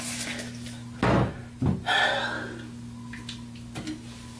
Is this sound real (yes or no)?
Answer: yes